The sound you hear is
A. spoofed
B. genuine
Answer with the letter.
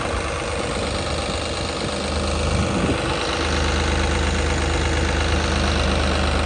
B